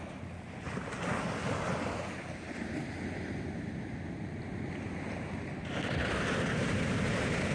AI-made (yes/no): no